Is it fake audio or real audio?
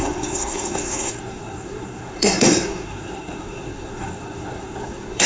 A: fake